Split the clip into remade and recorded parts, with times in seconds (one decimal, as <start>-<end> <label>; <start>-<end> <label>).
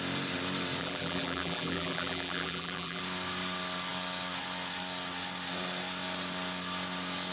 0.0-0.8 recorded; 0.8-3.0 remade; 3.0-7.3 recorded